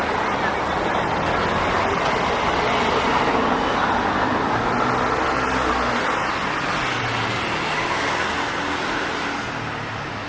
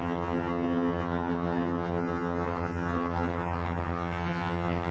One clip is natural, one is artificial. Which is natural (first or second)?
first